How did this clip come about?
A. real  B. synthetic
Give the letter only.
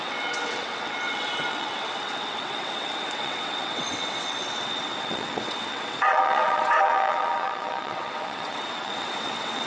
B